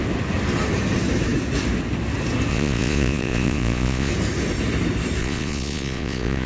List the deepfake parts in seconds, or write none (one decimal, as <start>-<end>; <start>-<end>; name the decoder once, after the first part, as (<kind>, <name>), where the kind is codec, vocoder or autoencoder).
2.5-4.1 (vocoder, Vocos); 5.2-6.5